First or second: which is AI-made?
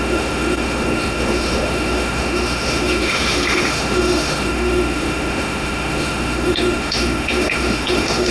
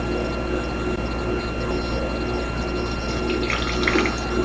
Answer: first